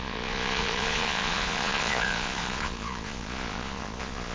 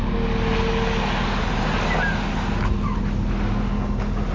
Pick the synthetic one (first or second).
first